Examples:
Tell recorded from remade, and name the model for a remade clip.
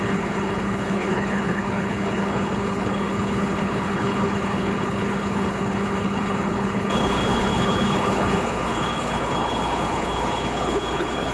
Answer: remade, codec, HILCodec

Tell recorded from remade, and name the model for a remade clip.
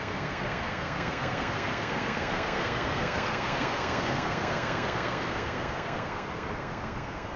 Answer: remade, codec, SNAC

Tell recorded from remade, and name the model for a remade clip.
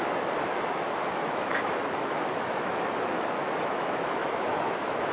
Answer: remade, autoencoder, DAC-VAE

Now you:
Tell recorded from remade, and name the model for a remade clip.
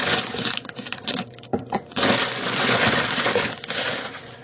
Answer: remade, vocoder, Vocos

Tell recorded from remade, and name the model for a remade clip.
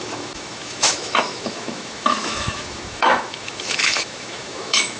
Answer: remade, autoencoder, DAC-VAE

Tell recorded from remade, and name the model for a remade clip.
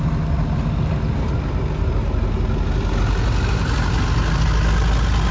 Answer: recorded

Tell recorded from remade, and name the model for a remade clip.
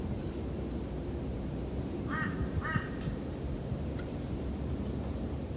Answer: remade, vocoder, BigVGAN v2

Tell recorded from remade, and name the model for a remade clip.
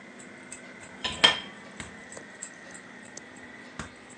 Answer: recorded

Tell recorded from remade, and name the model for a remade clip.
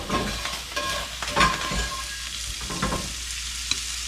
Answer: recorded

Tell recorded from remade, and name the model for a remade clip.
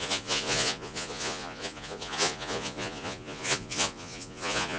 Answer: remade, vocoder, Vocos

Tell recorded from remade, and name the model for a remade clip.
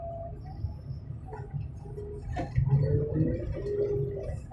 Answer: recorded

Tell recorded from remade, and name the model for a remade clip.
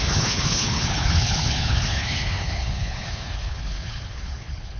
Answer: remade, codec, HILCodec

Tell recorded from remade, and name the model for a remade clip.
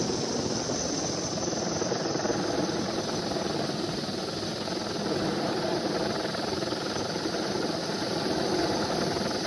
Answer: recorded